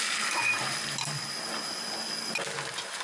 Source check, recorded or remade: recorded